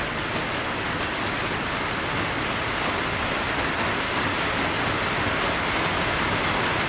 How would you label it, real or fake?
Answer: real